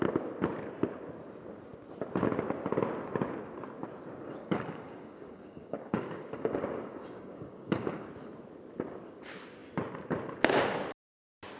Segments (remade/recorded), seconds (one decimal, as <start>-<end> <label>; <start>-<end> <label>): 0.0-4.4 recorded; 4.4-8.1 remade; 8.1-11.6 recorded